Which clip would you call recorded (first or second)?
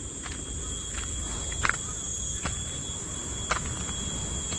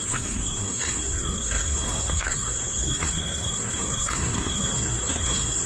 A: first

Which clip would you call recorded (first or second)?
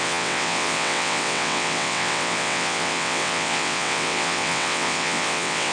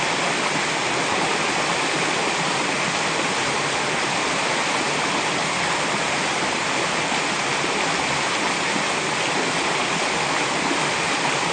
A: second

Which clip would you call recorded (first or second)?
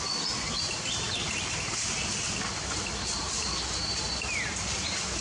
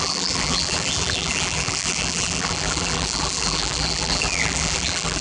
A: first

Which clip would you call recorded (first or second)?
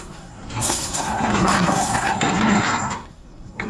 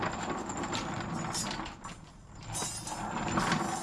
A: second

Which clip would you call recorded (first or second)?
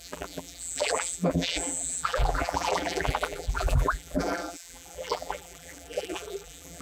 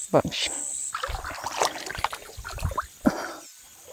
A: second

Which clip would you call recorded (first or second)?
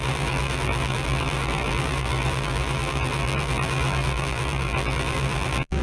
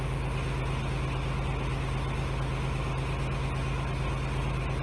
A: second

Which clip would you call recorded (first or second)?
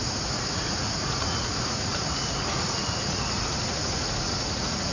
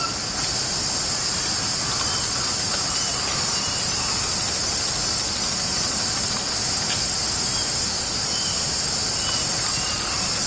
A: second